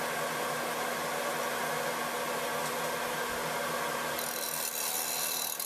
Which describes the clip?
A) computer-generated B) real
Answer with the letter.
B